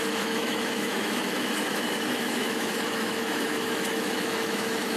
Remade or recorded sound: remade